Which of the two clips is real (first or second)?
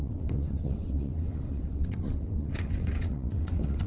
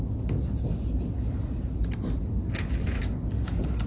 second